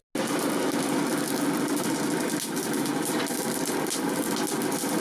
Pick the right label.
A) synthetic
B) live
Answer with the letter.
B